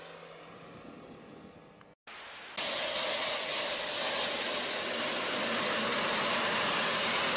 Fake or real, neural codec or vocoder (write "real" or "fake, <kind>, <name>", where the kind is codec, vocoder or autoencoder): real